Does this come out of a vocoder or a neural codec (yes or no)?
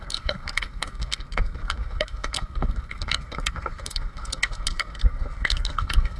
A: yes